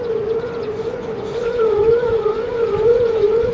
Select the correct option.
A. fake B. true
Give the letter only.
A